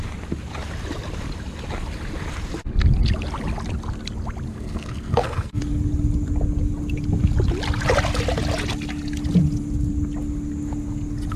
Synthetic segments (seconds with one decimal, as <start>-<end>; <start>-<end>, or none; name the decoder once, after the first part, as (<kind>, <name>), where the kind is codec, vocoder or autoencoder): 4.5-5.6 (codec, SNAC)